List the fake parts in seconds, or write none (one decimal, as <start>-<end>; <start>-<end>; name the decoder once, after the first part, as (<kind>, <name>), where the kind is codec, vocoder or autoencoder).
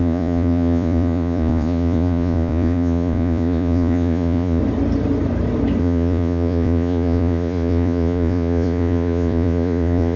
0.0-4.6 (vocoder, Vocos); 5.8-10.2